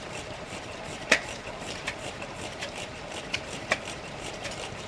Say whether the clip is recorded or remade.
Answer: remade